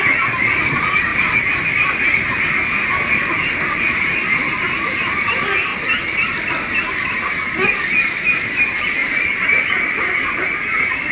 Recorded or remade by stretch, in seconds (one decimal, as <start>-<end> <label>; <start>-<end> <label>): 0.0-11.1 recorded